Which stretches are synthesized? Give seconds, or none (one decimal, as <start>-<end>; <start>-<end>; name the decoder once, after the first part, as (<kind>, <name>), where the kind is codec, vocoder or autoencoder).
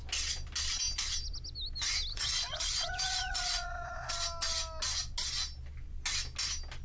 2.1-4.1 (vocoder, Vocos)